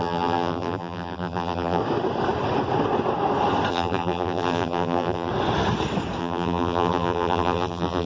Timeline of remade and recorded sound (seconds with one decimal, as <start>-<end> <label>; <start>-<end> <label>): 0.0-1.8 remade; 1.8-3.7 recorded; 3.7-5.3 remade; 5.3-6.2 recorded; 6.2-8.1 remade